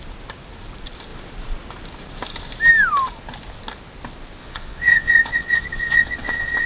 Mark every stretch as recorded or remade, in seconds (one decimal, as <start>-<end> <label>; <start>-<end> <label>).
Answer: 0.0-4.4 recorded; 4.4-6.7 remade

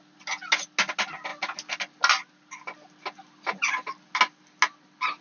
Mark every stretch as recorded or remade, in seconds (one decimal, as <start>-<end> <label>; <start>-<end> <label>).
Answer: 0.0-5.2 recorded

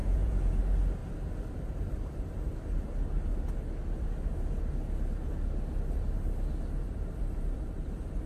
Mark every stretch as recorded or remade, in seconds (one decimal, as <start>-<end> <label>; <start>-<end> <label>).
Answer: 0.0-0.6 remade; 0.6-8.3 recorded

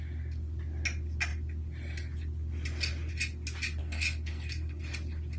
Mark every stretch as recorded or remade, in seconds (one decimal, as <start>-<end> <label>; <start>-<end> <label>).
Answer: 0.0-3.8 recorded; 3.8-4.8 remade; 4.8-5.4 recorded